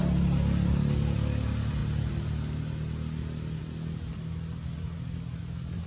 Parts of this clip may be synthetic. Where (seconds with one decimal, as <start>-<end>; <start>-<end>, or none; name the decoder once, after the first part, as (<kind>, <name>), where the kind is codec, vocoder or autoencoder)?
none